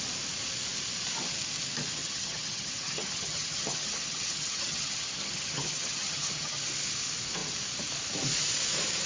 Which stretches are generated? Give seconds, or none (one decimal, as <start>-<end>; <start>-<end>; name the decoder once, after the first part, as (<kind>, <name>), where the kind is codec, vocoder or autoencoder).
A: 2.0-6.7 (vocoder, HiFi-GAN)